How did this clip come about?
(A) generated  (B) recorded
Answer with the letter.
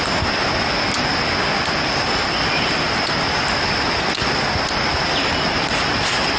B